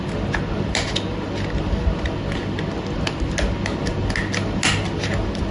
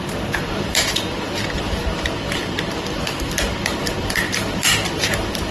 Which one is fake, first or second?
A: second